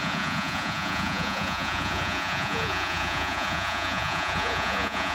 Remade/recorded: remade